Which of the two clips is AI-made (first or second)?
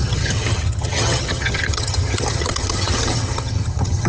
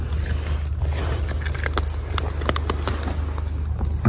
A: first